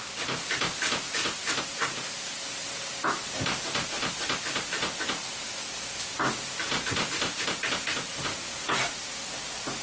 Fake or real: real